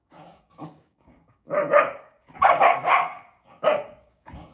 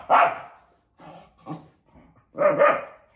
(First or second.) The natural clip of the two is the second